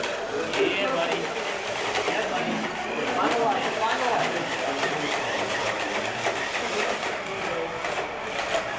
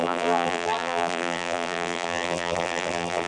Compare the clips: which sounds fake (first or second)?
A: second